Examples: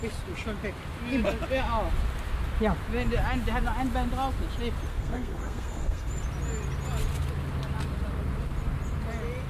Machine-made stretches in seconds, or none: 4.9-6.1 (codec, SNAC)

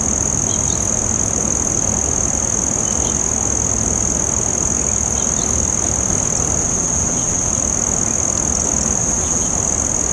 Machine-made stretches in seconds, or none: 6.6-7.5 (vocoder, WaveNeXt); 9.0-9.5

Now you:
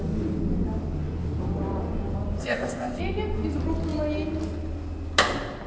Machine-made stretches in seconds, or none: 2.4-3.0 (codec, ZipCodec)